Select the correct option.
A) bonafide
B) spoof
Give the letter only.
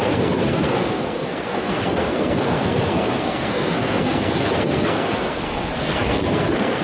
B